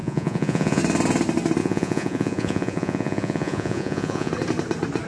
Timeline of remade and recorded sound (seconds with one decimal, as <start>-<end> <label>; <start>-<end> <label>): 0.0-0.8 remade; 0.8-1.6 recorded; 1.6-4.3 remade; 4.3-5.1 recorded